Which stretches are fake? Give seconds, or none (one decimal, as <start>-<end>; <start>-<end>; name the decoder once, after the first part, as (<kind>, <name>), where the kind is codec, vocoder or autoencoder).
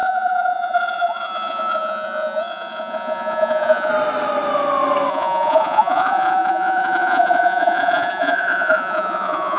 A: 0.0-3.9 (vocoder, Vocos); 5.1-9.6